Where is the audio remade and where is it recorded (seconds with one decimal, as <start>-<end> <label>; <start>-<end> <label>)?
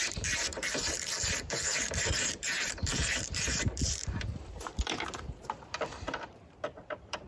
0.0-7.3 remade